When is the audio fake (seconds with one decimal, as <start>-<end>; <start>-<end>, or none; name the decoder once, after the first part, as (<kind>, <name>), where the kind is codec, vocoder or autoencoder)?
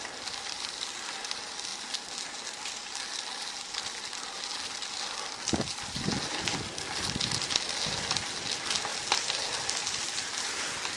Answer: none